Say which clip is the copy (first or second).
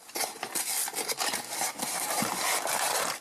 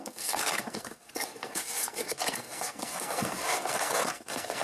second